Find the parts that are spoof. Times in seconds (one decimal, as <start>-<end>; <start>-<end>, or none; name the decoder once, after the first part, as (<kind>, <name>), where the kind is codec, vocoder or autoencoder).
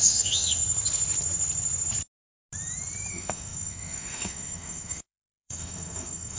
0.0-0.6 (autoencoder, DAC-VAE); 3.1-6.4